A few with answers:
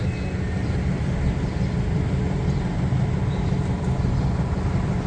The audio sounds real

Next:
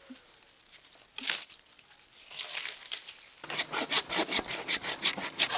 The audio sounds real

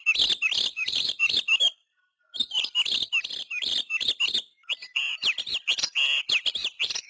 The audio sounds real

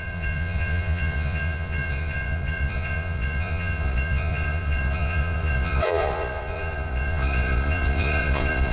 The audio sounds fake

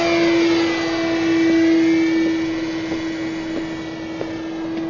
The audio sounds real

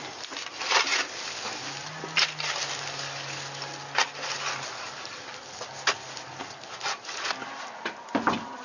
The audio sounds real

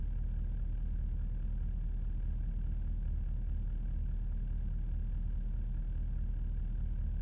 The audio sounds real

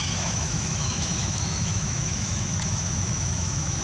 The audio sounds fake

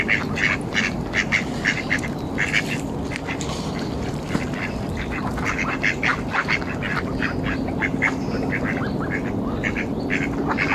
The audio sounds real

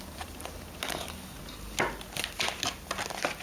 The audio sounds real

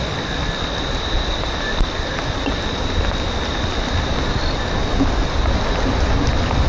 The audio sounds real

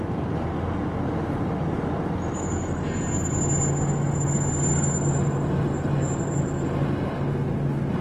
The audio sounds real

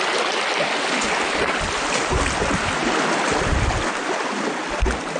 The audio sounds real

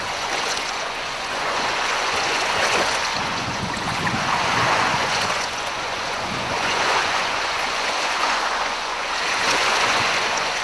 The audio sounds fake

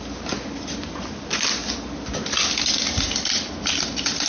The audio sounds real